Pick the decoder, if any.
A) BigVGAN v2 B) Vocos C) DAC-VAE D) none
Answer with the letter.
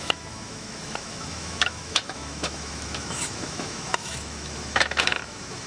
C